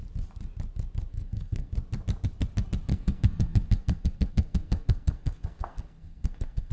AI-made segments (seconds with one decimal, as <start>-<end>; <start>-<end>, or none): 1.1-1.7; 2.9-6.7